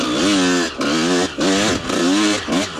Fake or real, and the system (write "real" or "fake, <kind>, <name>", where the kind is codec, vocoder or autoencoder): real